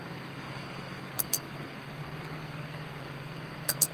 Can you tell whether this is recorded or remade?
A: remade